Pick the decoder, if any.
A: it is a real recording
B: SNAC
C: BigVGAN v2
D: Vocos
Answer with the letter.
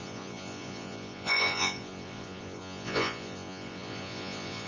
D